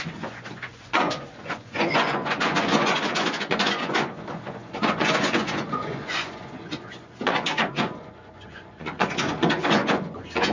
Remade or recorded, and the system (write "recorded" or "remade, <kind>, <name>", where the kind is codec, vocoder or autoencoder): remade, vocoder, Vocos